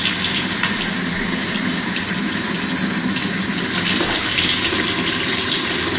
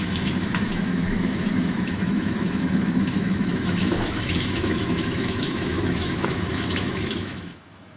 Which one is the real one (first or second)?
first